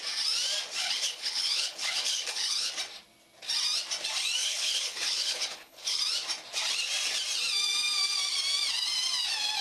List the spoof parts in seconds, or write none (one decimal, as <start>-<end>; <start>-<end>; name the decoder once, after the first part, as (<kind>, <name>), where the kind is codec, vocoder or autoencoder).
0.8-2.7 (codec, HILCodec); 4.4-6.0